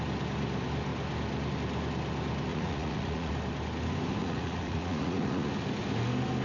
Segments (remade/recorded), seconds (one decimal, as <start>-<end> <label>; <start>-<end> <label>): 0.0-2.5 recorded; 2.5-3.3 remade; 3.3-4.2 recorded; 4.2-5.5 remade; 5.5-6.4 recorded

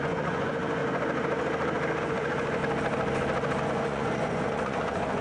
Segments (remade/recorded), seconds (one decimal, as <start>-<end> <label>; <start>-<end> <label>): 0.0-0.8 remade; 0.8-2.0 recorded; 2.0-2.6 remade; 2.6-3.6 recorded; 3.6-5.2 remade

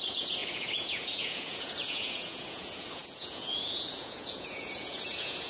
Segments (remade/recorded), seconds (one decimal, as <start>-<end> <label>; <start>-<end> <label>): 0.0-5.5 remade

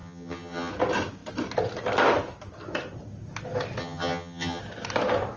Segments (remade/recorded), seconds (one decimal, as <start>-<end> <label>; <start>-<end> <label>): 0.0-0.7 remade; 0.7-3.8 recorded; 3.8-4.6 remade; 4.6-5.4 recorded

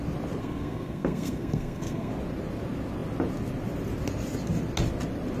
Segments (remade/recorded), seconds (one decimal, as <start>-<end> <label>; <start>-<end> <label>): 0.0-0.4 recorded; 0.4-2.1 remade; 2.1-5.4 recorded

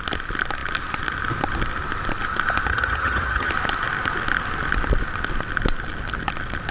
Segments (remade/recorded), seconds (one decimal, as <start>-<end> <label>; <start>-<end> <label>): 0.0-2.7 recorded; 2.7-3.5 remade; 3.5-6.7 recorded

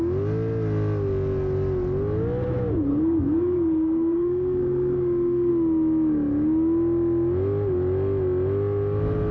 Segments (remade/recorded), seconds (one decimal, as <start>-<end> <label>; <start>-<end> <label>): 0.0-2.9 recorded; 2.9-5.5 remade; 5.5-9.3 recorded